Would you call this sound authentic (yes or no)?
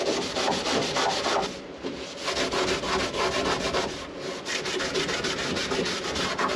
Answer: yes